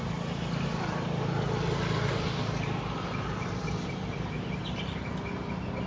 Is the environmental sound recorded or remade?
recorded